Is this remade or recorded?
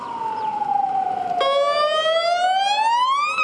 recorded